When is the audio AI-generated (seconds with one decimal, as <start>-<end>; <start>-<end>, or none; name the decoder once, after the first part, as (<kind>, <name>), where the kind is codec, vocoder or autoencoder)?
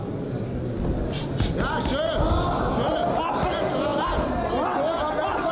none